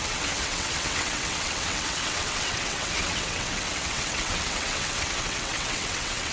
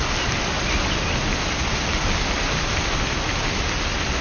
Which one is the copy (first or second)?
first